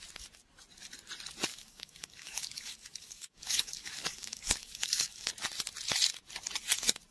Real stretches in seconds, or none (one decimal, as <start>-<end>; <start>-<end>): 0.0-1.5; 5.3-7.1